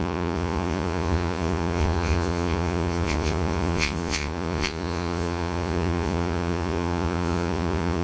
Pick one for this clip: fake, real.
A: fake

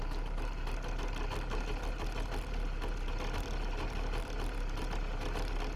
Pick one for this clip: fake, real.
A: real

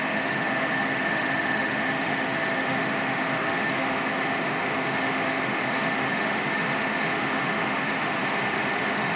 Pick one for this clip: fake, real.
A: fake